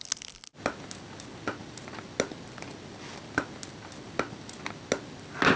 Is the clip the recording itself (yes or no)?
yes